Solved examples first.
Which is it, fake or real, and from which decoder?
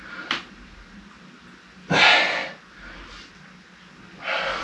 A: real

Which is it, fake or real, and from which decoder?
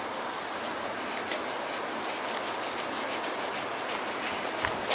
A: real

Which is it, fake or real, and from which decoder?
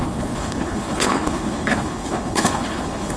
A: fake, codec, HILCodec